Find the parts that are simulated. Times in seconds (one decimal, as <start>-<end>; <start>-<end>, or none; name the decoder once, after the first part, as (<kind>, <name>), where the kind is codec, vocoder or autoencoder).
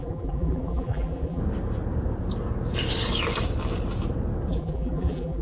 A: 0.0-1.4 (vocoder, BigVGAN v2); 4.5-5.4